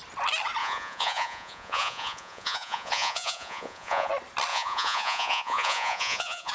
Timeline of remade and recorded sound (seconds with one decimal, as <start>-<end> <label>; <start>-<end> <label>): 0.0-0.6 recorded; 0.6-4.1 remade; 4.1-4.5 recorded; 4.5-6.5 remade